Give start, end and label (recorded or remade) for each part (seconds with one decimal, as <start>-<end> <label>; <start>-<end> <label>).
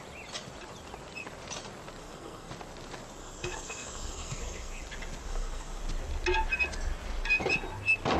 0.0-2.0 recorded; 2.0-2.5 remade; 2.5-3.2 recorded; 3.2-4.8 remade; 4.8-5.2 recorded; 5.2-5.8 remade; 5.8-8.2 recorded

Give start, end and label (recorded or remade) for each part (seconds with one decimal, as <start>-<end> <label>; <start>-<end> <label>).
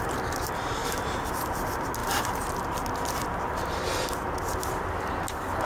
0.0-5.7 recorded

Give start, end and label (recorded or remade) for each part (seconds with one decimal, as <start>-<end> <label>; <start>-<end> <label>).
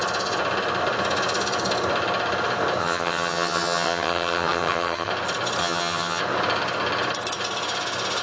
0.0-2.8 recorded; 2.8-5.1 remade; 5.1-5.6 recorded; 5.6-6.2 remade; 6.2-8.2 recorded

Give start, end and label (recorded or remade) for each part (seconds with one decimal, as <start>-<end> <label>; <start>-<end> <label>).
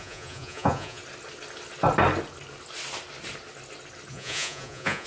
0.0-1.0 remade; 1.0-4.1 recorded; 4.1-5.1 remade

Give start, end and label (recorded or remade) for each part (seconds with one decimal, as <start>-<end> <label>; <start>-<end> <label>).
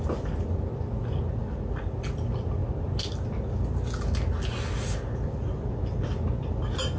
0.0-7.0 recorded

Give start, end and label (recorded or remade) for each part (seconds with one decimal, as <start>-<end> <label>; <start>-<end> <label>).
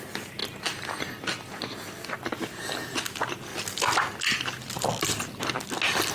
0.0-6.1 recorded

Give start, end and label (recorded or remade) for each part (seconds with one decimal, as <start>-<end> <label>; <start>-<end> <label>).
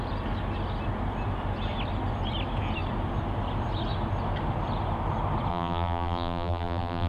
0.0-5.5 recorded; 5.5-7.1 remade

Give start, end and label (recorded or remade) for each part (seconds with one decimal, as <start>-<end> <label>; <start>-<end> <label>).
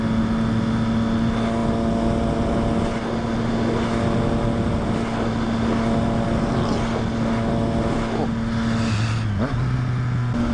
0.0-10.5 recorded